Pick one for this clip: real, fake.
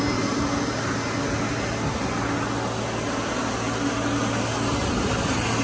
real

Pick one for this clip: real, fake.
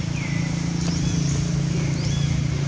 real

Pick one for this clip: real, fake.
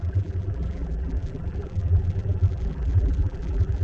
fake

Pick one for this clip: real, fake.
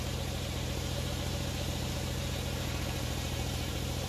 fake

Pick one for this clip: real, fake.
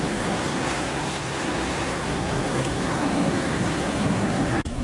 fake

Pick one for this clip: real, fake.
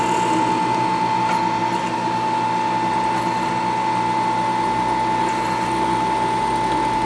real